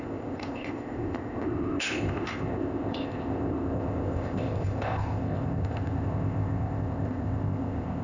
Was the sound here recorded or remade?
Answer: remade